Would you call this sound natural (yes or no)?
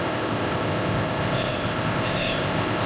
no